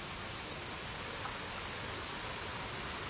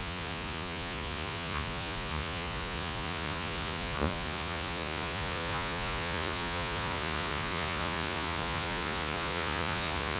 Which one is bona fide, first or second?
first